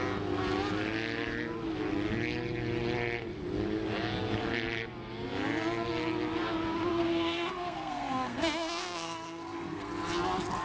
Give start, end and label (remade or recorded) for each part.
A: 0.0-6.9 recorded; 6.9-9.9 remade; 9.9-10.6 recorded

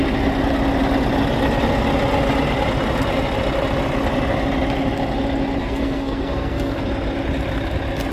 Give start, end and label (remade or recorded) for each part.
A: 0.0-5.6 recorded; 5.6-6.8 remade; 6.8-8.1 recorded

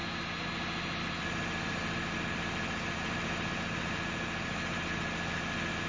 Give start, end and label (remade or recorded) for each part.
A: 0.0-5.9 recorded

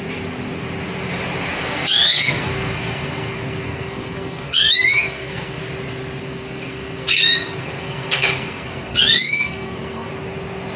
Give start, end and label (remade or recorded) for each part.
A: 0.0-1.6 recorded; 1.6-5.6 remade; 5.6-6.2 recorded; 6.2-10.1 remade; 10.1-10.8 recorded

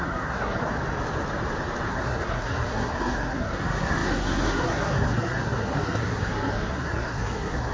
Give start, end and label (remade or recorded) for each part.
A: 0.0-0.6 remade; 0.6-1.9 recorded; 1.9-7.7 remade